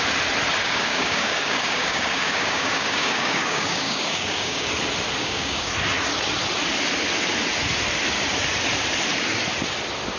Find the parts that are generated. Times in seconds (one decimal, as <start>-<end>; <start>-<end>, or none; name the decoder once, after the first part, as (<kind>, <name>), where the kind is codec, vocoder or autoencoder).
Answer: 0.6-4.7 (codec, DAC); 5.2-5.7

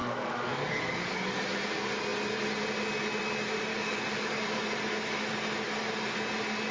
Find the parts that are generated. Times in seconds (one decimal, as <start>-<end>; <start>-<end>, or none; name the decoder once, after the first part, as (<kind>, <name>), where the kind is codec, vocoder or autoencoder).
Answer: 0.0-1.4 (codec, DAC); 3.7-4.6

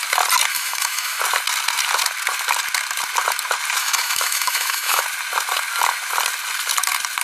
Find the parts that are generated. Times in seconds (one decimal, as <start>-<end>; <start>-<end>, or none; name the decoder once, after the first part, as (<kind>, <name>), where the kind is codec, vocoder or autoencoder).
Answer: 0.5-1.2 (autoencoder, DAC-VAE); 3.8-5.0

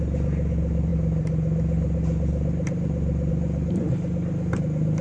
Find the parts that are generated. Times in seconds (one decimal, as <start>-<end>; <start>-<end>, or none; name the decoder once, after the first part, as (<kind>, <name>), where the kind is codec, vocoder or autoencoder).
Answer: none

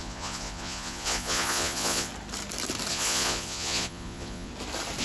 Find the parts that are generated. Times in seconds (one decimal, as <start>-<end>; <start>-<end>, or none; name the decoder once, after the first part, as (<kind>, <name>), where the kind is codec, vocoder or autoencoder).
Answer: 0.0-2.1 (vocoder, Vocos); 2.9-4.5

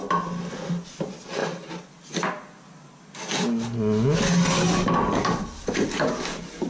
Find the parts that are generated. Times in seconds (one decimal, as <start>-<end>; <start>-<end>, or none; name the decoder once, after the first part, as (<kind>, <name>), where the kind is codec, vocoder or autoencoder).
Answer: none

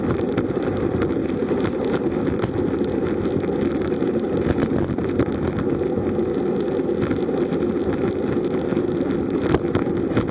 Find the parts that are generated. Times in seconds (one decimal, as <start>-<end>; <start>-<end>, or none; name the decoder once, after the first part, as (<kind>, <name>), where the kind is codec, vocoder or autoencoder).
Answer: 0.0-6.2 (vocoder, BigVGAN v2); 7.4-10.3